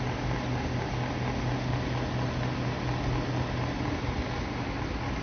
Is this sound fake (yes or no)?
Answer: no